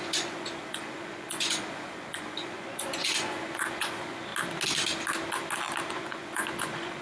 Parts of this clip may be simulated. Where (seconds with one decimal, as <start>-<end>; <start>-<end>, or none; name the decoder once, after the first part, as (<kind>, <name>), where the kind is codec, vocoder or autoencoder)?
0.0-4.3 (vocoder, Vocos); 5.9-7.0